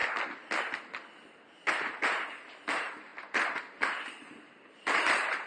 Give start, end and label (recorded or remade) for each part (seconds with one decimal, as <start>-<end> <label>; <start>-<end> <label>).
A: 0.0-1.7 recorded; 1.7-5.5 remade